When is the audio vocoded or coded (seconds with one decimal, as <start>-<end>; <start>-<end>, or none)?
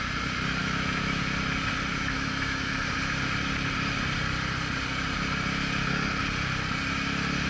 0.6-1.2; 1.9-2.7